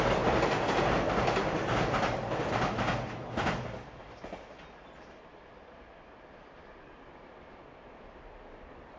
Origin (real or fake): real